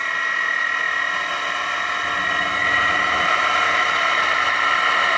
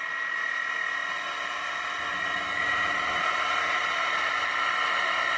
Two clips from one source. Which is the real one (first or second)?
second